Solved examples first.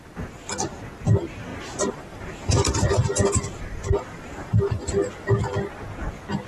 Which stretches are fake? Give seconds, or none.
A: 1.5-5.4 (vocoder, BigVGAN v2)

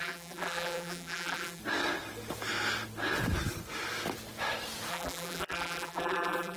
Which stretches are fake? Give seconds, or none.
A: 0.0-1.6 (vocoder, BigVGAN v2); 4.9-6.6

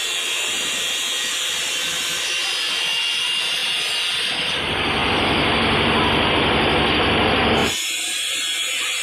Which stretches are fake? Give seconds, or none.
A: 7.6-8.4 (vocoder, BigVGAN v2)

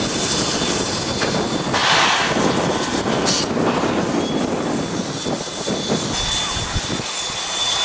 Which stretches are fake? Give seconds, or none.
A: none

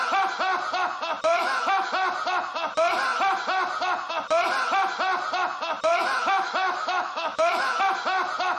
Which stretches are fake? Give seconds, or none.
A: 1.3-1.9 (autoencoder, DAC-VAE); 5.9-7.8